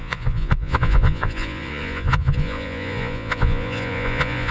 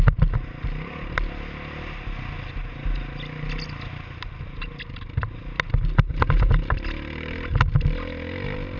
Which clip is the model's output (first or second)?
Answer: first